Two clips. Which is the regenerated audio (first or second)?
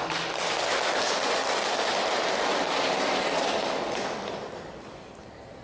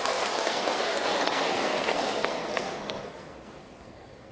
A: second